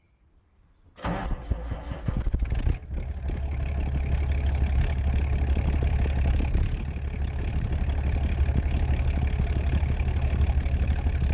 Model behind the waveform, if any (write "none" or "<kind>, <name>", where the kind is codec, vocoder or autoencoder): none